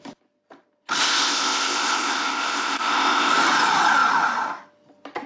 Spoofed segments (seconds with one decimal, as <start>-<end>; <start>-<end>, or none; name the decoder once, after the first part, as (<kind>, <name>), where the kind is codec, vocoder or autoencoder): 1.0-3.3 (codec, ZipCodec)

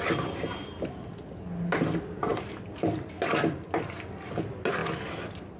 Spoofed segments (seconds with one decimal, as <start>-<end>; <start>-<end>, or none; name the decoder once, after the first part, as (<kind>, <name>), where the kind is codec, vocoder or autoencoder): none

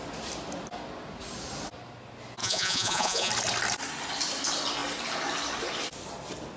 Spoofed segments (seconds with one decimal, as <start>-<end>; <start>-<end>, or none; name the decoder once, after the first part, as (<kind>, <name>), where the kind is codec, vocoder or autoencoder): 2.4-3.3 (vocoder, Vocos)

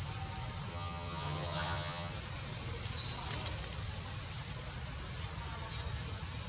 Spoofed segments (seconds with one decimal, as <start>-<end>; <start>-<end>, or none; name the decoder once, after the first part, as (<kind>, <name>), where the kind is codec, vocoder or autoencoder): 0.7-2.1 (vocoder, HiFi-GAN)

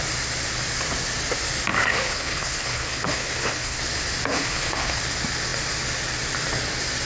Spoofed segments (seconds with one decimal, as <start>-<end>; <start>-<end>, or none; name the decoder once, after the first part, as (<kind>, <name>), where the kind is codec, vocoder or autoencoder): 1.9-3.8 (codec, HILCodec); 4.3-5.0

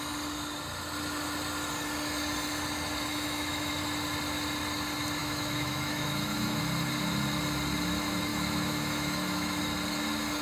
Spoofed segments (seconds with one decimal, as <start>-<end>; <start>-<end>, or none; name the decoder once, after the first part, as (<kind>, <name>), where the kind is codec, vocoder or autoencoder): 3.1-3.7 (autoencoder, DAC-VAE); 5.2-6.6; 8.3-9.6

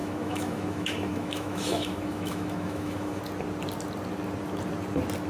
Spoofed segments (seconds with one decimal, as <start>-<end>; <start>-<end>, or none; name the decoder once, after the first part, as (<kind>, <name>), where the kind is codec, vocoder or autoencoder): 0.0-3.2 (autoencoder, DAC-VAE)